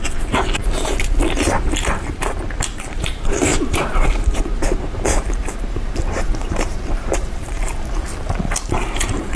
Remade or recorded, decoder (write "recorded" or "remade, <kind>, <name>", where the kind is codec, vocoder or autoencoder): remade, vocoder, BigVGAN v2